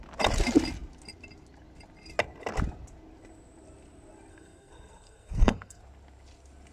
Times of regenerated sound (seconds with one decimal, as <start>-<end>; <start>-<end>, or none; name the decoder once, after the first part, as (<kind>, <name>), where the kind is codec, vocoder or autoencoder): 4.3-5.8 (codec, SNAC)